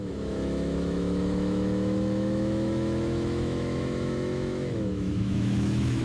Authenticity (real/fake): fake